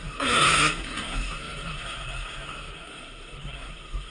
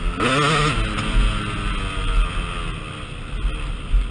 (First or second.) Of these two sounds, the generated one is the first